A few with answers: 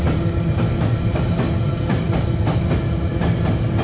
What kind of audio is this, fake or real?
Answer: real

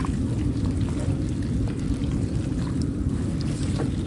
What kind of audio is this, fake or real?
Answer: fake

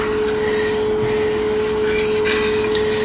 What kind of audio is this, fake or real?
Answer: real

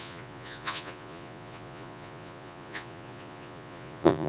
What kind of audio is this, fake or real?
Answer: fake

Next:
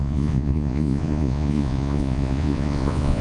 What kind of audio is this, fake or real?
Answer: fake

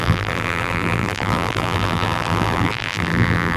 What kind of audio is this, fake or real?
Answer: fake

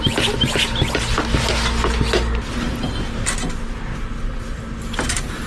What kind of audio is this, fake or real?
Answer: real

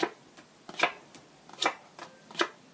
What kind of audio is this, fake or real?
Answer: real